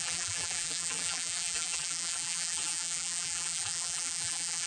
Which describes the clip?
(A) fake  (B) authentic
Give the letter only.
A